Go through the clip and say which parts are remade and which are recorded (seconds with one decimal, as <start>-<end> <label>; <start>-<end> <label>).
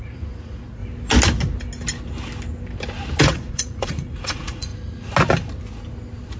0.0-0.8 remade; 0.8-3.2 recorded; 3.2-4.7 remade; 4.7-6.4 recorded